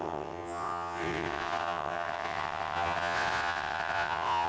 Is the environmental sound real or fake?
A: fake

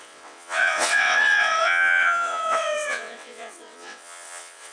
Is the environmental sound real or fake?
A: fake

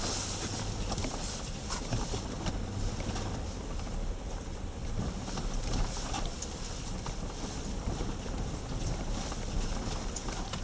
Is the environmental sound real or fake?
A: real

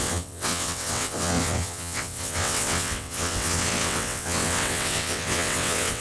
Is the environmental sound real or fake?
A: fake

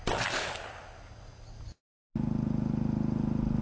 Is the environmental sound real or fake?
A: real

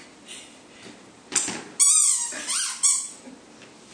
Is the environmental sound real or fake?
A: real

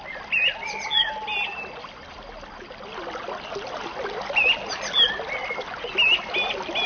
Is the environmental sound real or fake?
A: real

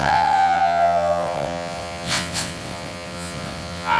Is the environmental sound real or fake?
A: fake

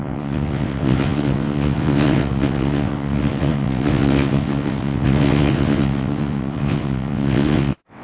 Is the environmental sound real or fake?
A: fake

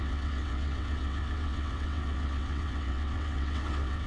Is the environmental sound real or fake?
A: fake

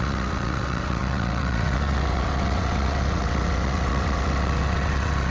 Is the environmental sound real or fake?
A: fake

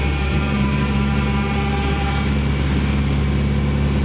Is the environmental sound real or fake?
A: real